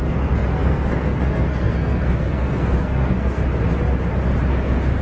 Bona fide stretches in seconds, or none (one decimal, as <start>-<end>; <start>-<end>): 3.4-4.5